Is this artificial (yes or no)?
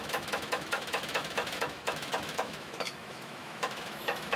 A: yes